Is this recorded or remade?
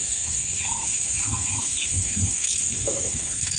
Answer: remade